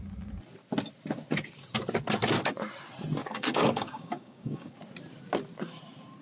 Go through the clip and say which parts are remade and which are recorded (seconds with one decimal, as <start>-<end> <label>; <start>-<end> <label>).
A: 0.0-3.2 recorded; 3.2-4.7 remade; 4.7-6.2 recorded